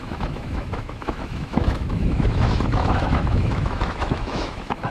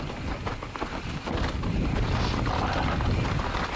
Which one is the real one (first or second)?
second